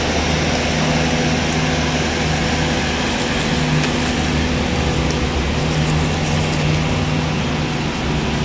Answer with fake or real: real